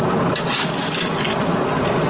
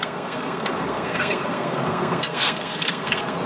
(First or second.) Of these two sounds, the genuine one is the first